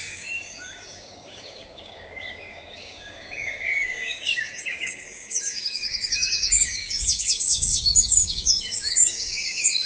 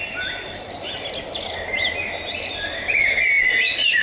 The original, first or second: second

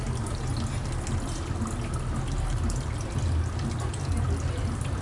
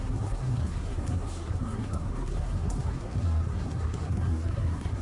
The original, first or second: first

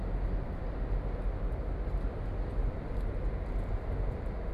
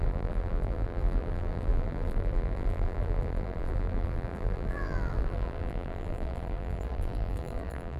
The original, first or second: first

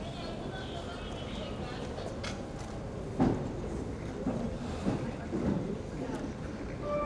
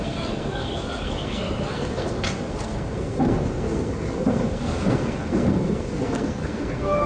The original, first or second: first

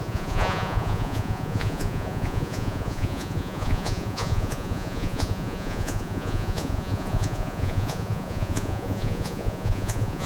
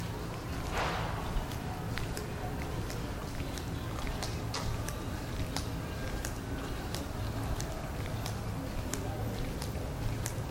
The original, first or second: second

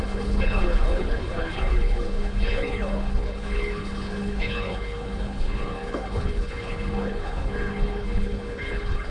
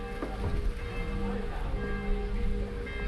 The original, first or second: second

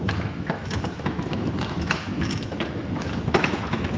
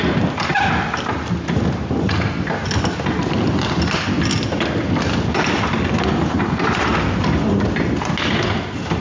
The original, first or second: second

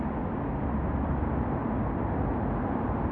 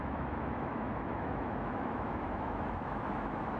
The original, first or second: first